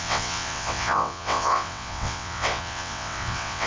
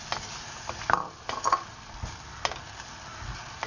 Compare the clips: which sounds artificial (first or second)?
first